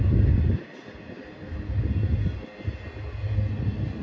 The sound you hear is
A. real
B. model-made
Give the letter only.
A